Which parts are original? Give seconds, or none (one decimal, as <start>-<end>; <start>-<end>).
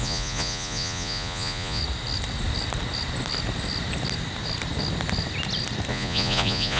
1.8-5.9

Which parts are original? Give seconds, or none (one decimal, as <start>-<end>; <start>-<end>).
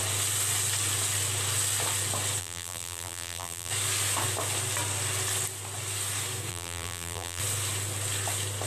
0.0-2.4; 3.7-6.5; 7.4-8.7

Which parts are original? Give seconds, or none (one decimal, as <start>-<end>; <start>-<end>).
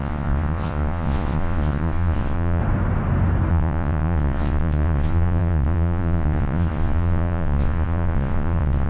2.6-3.5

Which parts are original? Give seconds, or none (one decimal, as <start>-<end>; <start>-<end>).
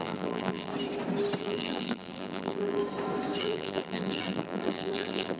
0.7-1.4; 2.8-3.4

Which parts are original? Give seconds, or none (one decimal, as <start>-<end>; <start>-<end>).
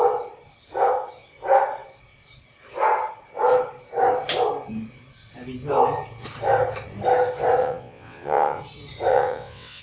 0.0-7.6; 8.6-9.1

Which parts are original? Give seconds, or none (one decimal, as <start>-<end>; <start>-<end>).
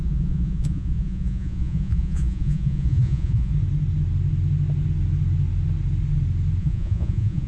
3.5-6.6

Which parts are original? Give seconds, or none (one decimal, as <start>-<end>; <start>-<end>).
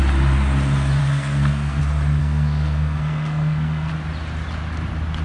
0.0-1.0; 1.8-2.2; 3.9-5.2